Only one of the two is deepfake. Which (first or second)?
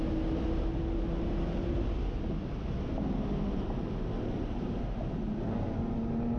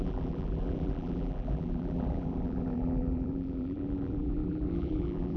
second